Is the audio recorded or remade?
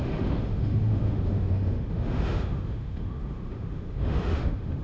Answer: remade